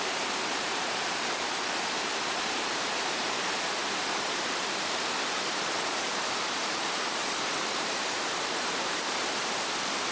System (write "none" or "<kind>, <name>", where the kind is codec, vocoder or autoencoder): vocoder, BigVGAN v2